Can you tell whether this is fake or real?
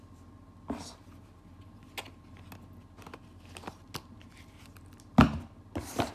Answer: real